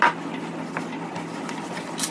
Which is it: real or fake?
real